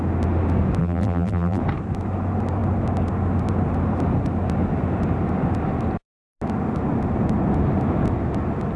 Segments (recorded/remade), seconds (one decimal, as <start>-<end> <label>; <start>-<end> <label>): 0.0-0.8 recorded; 0.8-1.6 remade; 1.6-8.8 recorded